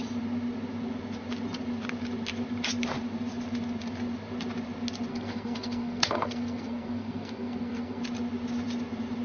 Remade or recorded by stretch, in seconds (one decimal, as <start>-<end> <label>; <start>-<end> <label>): 0.0-5.1 recorded; 5.1-8.0 remade; 8.0-9.2 recorded